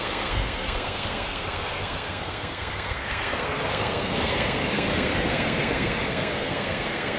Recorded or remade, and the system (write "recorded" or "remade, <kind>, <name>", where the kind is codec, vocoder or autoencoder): remade, codec, SNAC